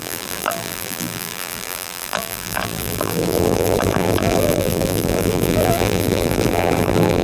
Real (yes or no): no